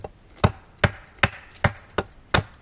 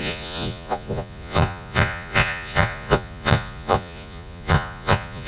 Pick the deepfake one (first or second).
second